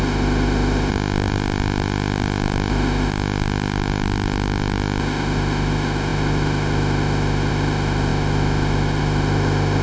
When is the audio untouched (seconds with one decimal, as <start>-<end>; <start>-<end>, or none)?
0.9-2.7; 3.1-5.0